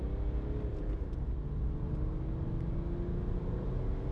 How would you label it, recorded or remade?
recorded